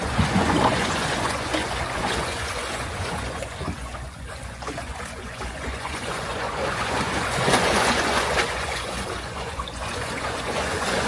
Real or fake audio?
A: fake